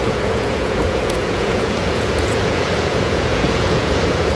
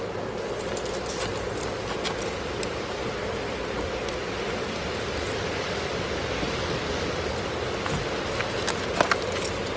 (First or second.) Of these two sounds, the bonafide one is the second